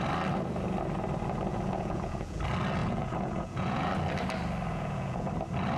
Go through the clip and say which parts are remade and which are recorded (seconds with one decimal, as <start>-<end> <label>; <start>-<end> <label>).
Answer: 0.0-1.5 recorded; 1.5-2.4 remade; 2.4-2.8 recorded; 2.8-3.9 remade; 3.9-4.7 recorded; 4.7-5.3 remade; 5.3-5.8 recorded